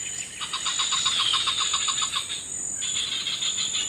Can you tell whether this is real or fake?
real